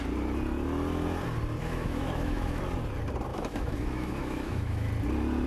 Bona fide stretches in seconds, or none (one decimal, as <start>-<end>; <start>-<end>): 0.0-1.6; 2.6-3.3; 4.9-5.5